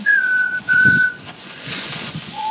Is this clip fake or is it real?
fake